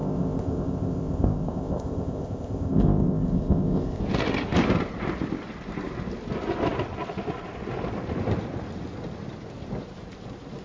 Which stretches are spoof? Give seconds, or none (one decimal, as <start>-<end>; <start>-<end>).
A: 0.0-4.0